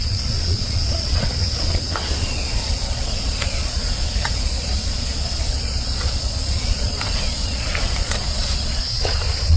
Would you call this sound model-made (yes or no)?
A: yes